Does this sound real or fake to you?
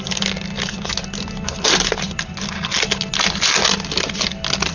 real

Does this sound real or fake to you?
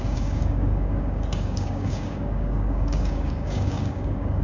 fake